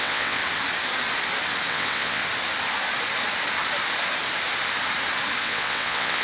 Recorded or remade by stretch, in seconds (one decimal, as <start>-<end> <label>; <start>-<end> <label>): 0.0-0.4 remade; 0.4-1.7 recorded; 1.7-2.2 remade; 2.2-5.4 recorded; 5.4-6.2 remade